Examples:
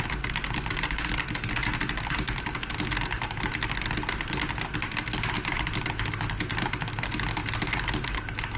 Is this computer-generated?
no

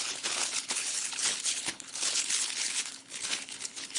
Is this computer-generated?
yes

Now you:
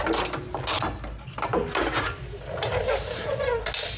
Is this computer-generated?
no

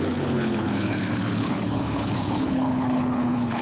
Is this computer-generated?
yes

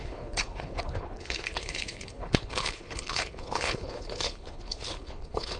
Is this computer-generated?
yes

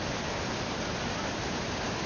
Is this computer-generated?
no